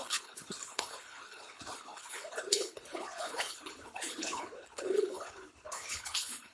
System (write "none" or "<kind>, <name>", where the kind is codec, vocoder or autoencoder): codec, HILCodec